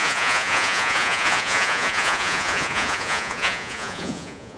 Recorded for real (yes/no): no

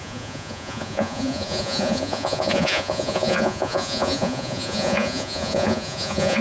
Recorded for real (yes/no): no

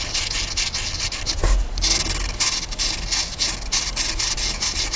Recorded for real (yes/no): yes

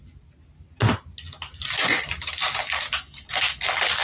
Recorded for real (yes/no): yes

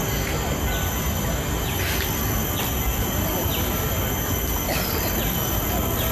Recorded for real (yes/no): yes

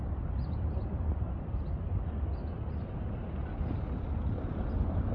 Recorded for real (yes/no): yes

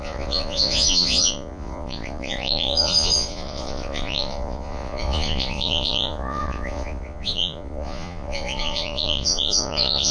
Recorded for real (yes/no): no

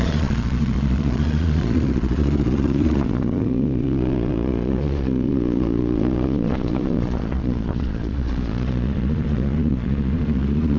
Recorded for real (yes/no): no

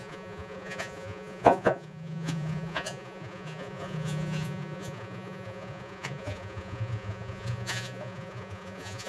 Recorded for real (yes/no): no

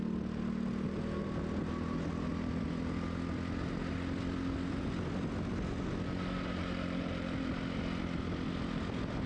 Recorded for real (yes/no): yes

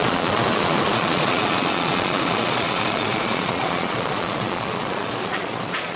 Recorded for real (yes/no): no